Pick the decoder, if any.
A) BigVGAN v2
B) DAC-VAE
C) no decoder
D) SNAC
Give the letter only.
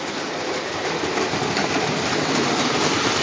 C